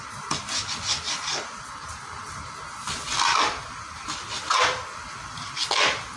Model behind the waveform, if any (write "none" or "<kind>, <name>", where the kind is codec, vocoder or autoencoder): none